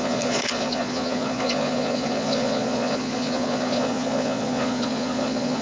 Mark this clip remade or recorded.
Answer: remade